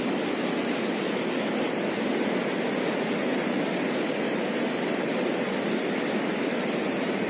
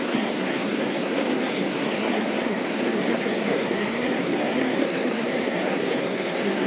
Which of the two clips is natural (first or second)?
first